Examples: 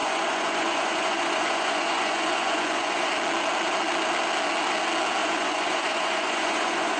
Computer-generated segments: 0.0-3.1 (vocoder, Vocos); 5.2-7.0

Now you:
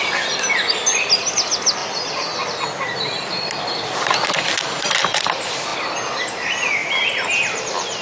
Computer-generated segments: none